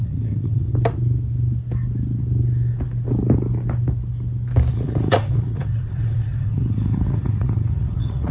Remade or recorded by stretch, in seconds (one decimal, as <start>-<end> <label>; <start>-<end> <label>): 0.0-0.7 remade; 0.7-4.7 recorded; 4.7-8.3 remade